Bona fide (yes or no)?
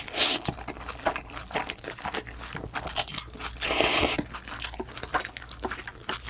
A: yes